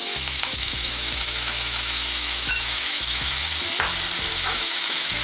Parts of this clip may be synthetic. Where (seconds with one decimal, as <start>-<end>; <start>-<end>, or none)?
0.0-3.4; 4.3-5.2